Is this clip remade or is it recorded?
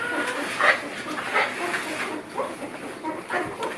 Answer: recorded